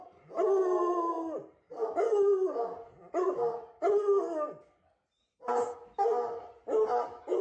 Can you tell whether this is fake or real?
real